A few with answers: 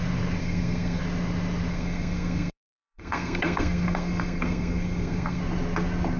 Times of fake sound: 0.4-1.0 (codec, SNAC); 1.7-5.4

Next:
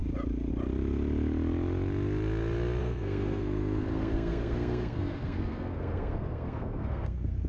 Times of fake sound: 2.8-7.5 (codec, SNAC)

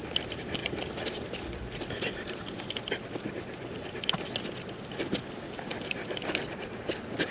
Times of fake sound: none

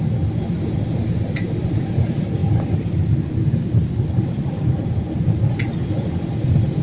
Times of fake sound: none

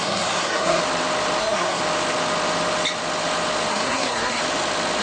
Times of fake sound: 0.0-0.8 (codec, SNAC); 1.4-1.8; 3.7-4.4

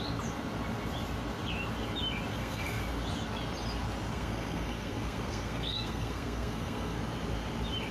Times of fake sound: 2.3-2.8 (codec, SNAC); 4.1-7.0